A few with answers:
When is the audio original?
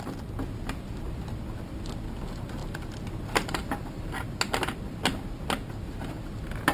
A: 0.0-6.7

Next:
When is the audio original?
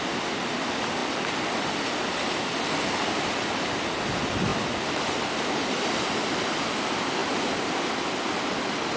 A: 0.0-9.0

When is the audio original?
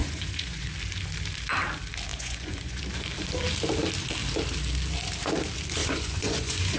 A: 0.7-2.1; 2.8-5.8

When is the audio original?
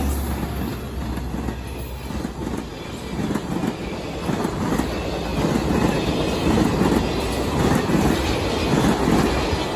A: 0.0-9.8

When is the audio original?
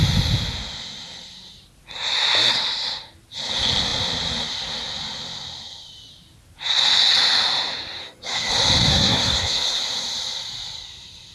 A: 0.0-8.0; 8.5-8.9; 9.8-11.3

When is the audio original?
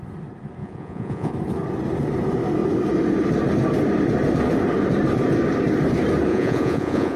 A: 0.0-0.6; 1.3-6.3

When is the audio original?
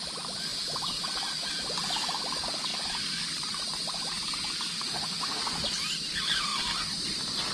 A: 0.0-4.7; 5.4-7.5